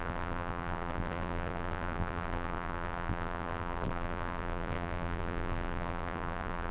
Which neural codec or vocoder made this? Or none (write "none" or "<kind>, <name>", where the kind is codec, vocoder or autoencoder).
vocoder, BigVGAN v2